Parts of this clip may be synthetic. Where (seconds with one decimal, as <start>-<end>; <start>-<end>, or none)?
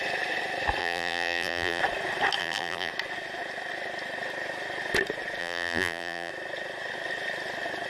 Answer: 0.8-1.8; 2.4-2.9; 5.4-6.3